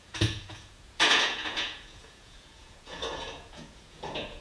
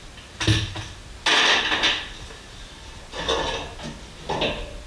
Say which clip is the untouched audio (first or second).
second